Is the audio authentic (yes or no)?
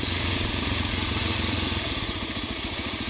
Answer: no